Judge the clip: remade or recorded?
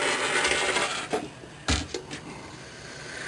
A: recorded